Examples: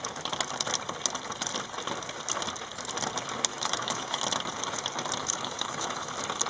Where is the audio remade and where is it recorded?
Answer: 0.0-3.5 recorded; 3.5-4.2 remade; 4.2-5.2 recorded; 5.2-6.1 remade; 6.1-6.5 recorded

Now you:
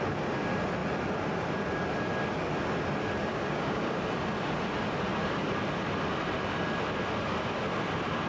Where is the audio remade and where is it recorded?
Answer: 0.0-3.3 recorded; 3.3-4.0 remade; 4.0-8.3 recorded

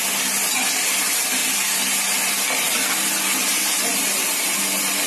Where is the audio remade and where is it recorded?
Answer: 0.0-5.1 recorded

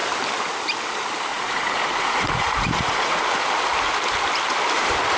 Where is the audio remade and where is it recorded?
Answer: 0.0-1.3 recorded; 1.3-3.3 remade; 3.3-5.2 recorded